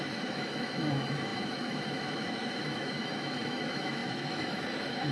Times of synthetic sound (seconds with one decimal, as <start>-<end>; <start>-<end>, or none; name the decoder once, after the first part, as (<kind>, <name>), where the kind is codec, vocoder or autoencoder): 0.0-5.1 (autoencoder, DAC-VAE)